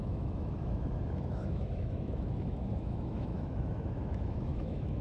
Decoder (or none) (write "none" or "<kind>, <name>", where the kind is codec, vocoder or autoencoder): autoencoder, DAC-VAE